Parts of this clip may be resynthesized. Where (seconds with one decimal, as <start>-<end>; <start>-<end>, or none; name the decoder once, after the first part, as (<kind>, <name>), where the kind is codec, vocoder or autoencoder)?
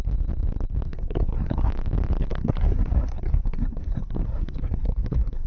0.9-1.7 (codec, SNAC); 2.3-5.5